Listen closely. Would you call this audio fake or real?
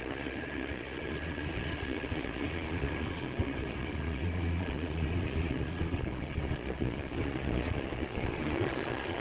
fake